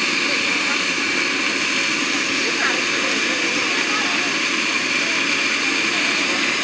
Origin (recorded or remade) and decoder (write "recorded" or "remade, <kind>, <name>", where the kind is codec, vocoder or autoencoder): recorded